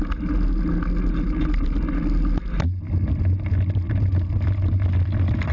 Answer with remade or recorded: recorded